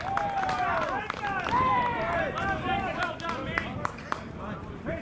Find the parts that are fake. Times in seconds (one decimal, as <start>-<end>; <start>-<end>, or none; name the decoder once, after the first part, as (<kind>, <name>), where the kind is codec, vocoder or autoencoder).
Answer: 0.6-1.9 (vocoder, BigVGAN v2); 2.9-5.0

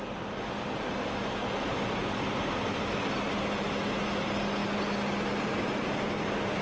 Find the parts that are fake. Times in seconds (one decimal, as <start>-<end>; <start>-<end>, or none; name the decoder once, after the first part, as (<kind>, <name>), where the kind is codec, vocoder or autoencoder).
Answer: none

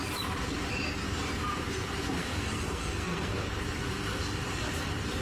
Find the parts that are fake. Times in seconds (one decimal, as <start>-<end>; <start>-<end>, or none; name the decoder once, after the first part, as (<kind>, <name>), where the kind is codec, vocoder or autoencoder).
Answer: 2.2-3.4 (codec, SNAC)

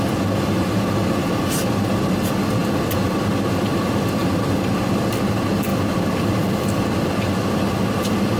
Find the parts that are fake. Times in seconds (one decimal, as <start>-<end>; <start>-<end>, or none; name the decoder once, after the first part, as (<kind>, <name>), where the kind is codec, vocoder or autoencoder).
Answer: 5.7-7.3 (vocoder, BigVGAN v2)

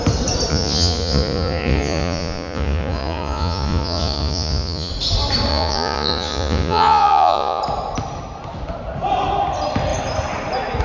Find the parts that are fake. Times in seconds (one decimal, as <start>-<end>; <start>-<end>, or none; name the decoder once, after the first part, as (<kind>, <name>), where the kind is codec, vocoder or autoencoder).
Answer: 0.5-4.9 (vocoder, Vocos); 5.5-7.6

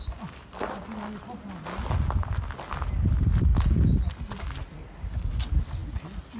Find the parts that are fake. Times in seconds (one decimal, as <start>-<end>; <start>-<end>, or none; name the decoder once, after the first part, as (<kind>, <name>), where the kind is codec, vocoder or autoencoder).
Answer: none